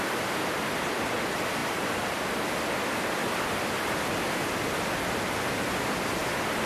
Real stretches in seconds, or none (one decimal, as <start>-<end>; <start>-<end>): 0.0-6.7

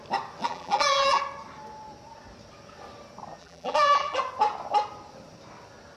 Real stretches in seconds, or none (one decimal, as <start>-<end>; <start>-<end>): 0.0-0.4; 1.2-3.4; 4.2-6.0

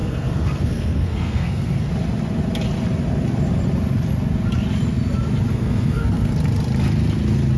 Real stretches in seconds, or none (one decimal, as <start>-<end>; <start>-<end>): 1.9-5.5; 6.3-7.6

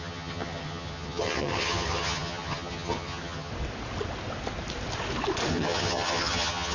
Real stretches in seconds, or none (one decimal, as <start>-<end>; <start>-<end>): 3.5-5.5

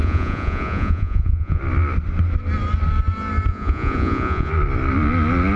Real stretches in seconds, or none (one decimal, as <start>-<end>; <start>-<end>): 1.6-3.5; 4.5-5.6

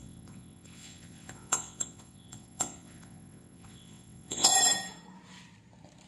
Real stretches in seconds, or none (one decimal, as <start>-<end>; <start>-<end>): 4.5-6.1

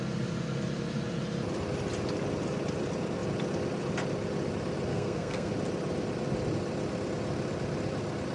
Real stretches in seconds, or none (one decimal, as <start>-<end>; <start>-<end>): 0.0-4.9; 5.5-8.3

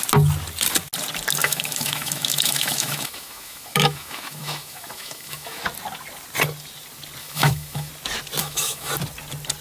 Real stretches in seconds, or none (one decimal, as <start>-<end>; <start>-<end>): 0.0-1.4; 5.6-7.2; 7.9-8.4; 8.9-9.6